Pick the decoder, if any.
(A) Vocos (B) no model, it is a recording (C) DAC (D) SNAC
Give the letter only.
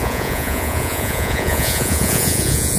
A